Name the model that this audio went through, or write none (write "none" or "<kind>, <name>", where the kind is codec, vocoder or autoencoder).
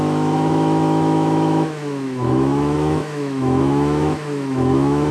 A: autoencoder, DAC-VAE